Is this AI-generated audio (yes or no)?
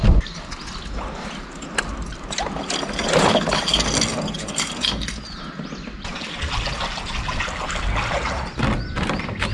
no